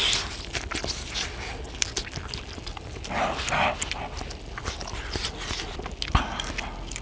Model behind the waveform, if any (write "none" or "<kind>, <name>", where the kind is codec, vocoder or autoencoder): none